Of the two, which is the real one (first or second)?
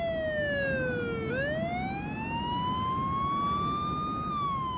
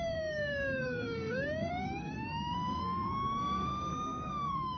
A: first